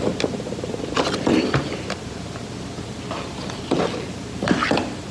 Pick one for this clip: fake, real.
fake